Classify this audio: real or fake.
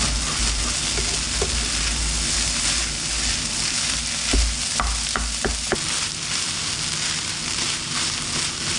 real